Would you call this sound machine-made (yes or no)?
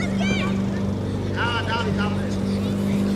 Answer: no